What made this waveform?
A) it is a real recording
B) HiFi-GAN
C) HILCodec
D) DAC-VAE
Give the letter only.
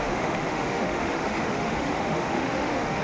D